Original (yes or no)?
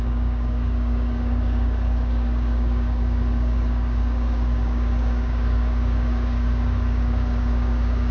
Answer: no